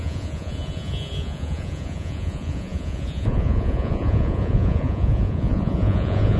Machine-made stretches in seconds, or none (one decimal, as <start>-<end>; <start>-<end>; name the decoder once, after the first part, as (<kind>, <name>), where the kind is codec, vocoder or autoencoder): 0.0-6.4 (vocoder, Vocos)